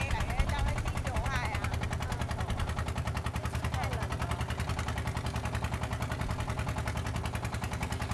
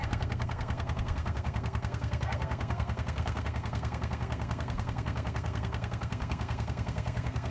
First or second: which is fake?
second